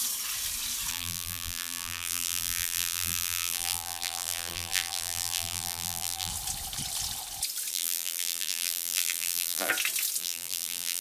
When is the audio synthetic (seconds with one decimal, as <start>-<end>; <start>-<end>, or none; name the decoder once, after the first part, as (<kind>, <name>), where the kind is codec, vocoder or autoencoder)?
0.9-6.3 (vocoder, BigVGAN v2); 7.7-9.7; 10.2-11.0